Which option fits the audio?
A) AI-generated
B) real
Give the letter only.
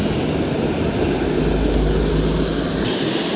B